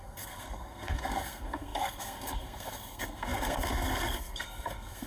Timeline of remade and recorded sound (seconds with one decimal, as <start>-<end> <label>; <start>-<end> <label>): 0.0-5.1 remade